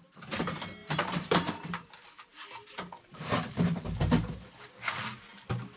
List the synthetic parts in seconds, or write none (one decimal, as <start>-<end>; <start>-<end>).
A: 0.8-4.3